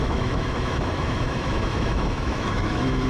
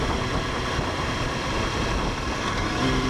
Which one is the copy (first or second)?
first